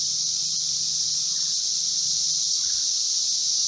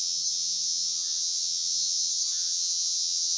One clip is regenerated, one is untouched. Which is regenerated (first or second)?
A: second